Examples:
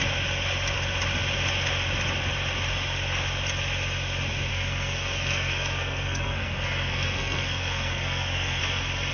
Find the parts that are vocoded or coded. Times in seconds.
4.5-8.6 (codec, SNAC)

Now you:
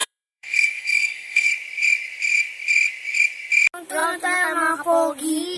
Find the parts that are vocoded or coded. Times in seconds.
0.0-1.5 (codec, SNAC)

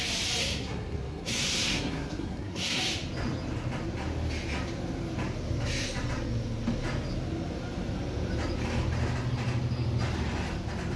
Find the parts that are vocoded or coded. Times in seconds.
0.4-2.8 (codec, SNAC)

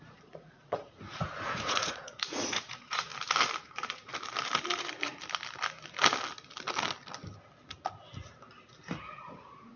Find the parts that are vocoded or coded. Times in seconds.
0.0-3.1 (vocoder, Vocos); 3.6-4.1; 9.0-9.8